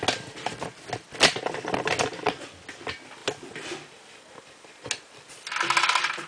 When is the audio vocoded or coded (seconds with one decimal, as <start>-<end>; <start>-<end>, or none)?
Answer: none